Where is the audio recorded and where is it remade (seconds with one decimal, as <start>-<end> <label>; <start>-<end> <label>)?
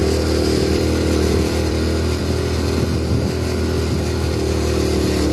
0.0-2.2 remade; 2.2-5.3 recorded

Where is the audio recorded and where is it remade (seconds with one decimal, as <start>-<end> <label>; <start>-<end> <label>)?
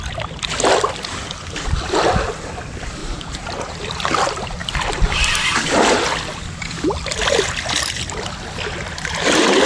0.0-3.0 recorded; 3.0-3.8 remade; 3.8-9.7 recorded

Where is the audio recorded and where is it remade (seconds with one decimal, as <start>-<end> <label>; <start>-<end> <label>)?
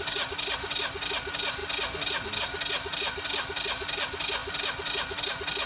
0.0-5.7 recorded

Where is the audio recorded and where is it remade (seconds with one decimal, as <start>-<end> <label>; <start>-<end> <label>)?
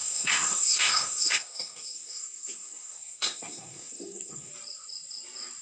0.0-4.5 remade; 4.5-5.6 recorded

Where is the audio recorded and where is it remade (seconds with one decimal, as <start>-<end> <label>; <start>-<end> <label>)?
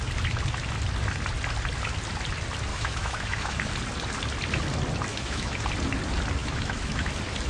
0.0-2.7 recorded; 2.7-3.7 remade; 3.7-5.1 recorded; 5.1-5.6 remade; 5.6-6.4 recorded; 6.4-7.1 remade; 7.1-7.5 recorded